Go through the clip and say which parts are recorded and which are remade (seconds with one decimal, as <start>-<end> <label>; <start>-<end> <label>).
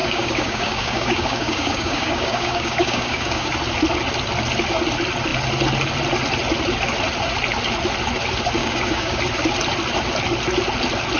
0.0-3.5 remade; 3.5-8.6 recorded; 8.6-9.2 remade; 9.2-11.2 recorded